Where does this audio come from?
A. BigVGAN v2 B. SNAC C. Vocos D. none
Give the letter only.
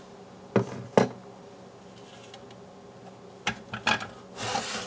D